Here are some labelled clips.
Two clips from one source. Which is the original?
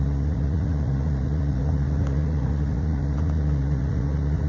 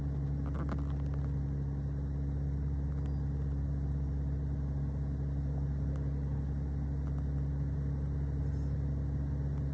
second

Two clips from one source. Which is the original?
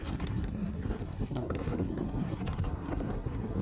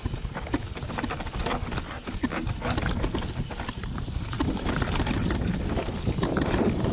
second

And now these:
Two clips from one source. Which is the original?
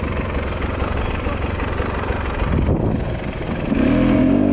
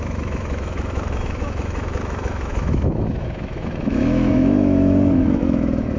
first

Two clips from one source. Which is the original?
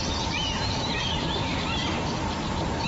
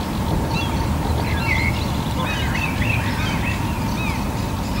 second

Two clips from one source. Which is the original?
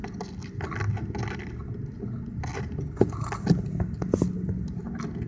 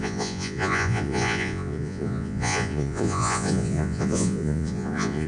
first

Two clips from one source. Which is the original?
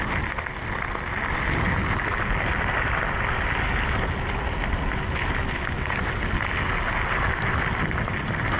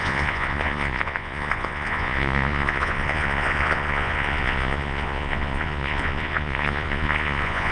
first